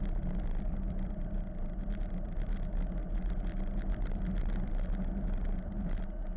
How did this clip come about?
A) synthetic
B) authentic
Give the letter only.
B